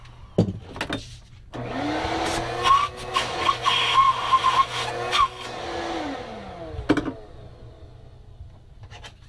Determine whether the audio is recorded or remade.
recorded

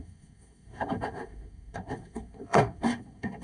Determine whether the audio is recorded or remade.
remade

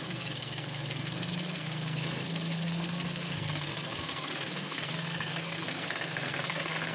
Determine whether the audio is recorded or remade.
remade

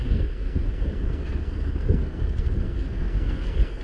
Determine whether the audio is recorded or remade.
remade